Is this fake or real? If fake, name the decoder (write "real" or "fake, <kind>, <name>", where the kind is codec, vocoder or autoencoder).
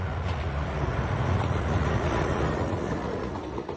fake, vocoder, Vocos